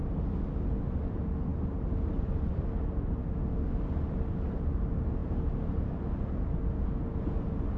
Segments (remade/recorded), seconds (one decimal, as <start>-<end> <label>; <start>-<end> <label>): 0.0-7.8 recorded